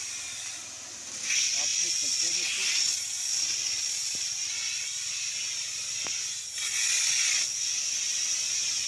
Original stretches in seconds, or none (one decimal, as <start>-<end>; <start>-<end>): 0.0-8.9